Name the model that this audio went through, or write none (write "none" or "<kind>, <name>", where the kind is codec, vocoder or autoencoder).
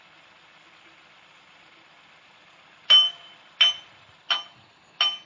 none